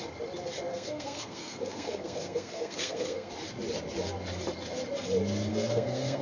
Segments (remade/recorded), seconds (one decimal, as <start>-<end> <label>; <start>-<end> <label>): 0.0-0.7 recorded; 0.7-3.3 remade; 3.3-5.5 recorded; 5.5-6.2 remade